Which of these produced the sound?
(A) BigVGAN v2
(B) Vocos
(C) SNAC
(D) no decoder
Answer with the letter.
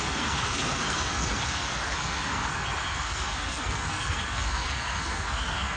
C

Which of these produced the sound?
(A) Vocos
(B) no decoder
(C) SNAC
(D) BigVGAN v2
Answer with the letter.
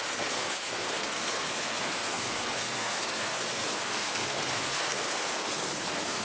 C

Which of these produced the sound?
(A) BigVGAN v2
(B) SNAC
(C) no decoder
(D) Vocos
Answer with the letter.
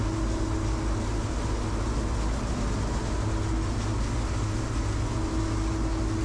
C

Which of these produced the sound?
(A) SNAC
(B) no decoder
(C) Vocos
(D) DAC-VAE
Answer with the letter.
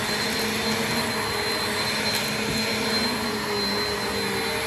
B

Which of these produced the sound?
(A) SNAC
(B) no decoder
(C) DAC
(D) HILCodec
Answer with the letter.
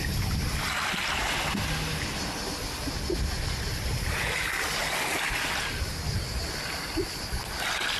B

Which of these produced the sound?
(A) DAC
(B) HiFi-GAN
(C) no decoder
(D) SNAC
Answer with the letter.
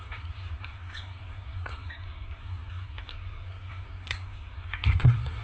D